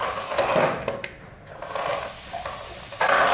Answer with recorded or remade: recorded